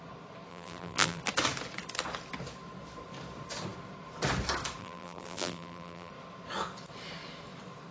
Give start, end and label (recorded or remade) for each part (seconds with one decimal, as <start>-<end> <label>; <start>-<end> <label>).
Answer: 0.0-0.5 recorded; 0.5-1.2 remade; 1.2-4.8 recorded; 4.8-6.1 remade; 6.1-7.9 recorded